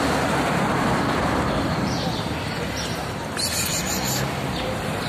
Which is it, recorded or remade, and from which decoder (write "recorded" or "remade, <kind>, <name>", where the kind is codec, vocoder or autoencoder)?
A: remade, vocoder, BigVGAN v2